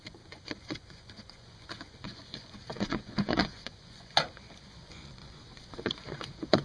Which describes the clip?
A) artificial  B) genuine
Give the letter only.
A